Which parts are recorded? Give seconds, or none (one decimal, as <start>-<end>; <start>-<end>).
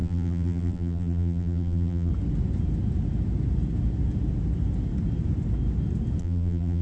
2.1-6.2